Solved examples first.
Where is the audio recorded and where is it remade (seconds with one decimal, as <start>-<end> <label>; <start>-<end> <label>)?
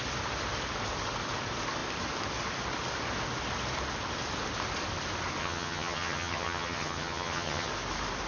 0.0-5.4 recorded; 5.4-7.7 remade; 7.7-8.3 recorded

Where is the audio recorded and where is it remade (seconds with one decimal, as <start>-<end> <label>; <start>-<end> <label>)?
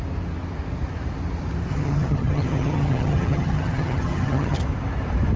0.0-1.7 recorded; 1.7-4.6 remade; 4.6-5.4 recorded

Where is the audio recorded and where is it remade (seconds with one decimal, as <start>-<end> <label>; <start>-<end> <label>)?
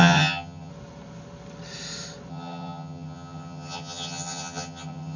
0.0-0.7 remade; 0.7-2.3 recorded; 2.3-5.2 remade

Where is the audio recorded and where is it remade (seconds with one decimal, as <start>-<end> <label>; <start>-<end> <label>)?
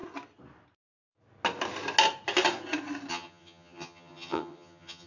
0.0-3.1 recorded; 3.1-5.1 remade